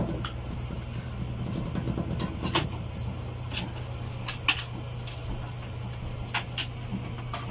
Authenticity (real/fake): real